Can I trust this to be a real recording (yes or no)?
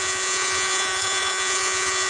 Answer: no